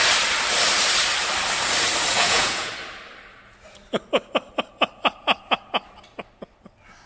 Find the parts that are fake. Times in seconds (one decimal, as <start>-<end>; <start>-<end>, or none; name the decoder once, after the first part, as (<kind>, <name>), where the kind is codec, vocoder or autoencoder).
2.1-2.7 (vocoder, Vocos)